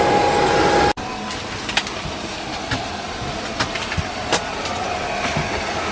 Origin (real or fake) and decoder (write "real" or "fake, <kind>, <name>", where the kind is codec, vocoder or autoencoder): real